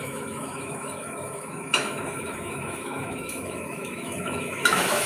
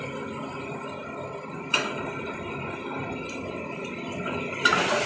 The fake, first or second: first